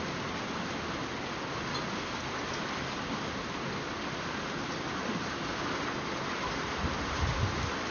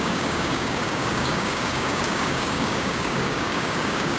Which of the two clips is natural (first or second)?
first